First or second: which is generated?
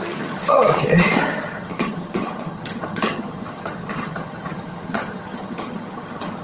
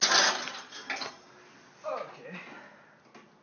first